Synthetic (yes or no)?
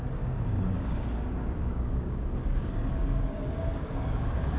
yes